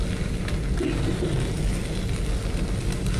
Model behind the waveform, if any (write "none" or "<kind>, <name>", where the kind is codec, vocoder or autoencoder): none